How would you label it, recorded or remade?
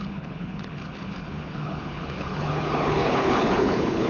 remade